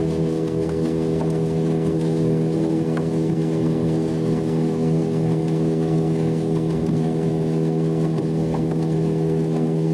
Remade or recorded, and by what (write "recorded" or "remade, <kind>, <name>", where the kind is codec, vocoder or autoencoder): remade, codec, SNAC